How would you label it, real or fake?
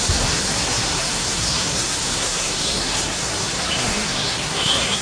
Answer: fake